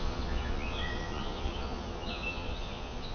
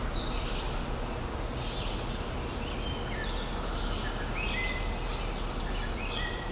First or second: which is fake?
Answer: first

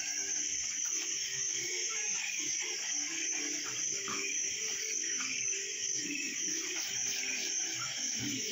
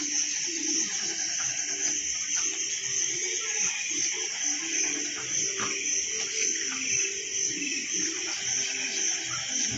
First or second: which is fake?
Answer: first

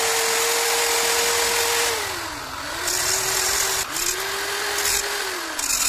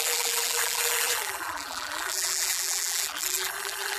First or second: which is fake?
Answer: second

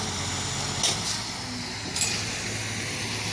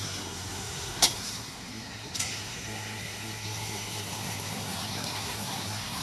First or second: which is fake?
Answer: second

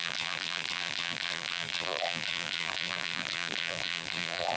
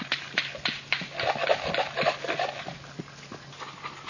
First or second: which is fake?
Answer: first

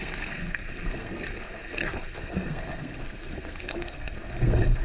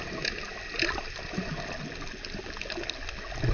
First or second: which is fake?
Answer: first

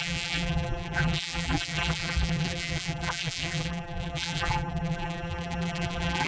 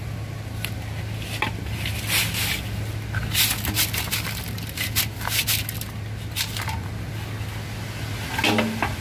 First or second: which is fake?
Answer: first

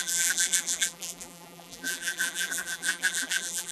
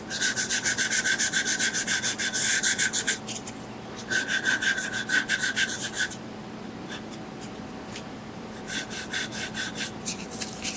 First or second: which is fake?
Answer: first